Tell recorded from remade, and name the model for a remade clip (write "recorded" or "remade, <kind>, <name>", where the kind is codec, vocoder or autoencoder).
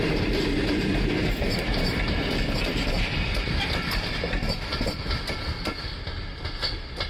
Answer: recorded